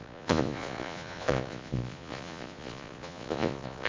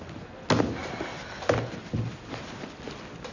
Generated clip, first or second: first